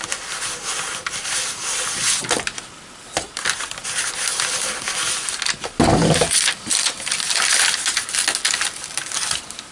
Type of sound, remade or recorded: recorded